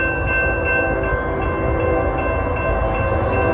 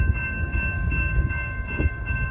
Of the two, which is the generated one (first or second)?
second